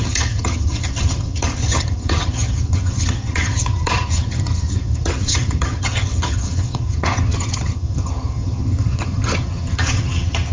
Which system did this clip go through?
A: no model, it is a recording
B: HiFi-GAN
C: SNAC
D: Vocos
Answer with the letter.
B